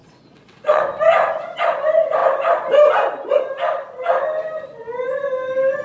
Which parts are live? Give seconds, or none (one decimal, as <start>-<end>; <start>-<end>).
0.8-5.8